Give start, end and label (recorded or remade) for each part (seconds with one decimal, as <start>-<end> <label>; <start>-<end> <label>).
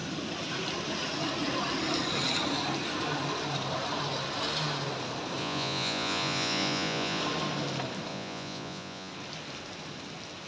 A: 0.0-5.4 recorded; 5.4-7.2 remade; 7.2-8.1 recorded; 8.1-9.1 remade; 9.1-10.5 recorded